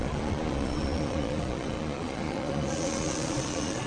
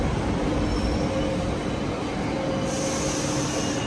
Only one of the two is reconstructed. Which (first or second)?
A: first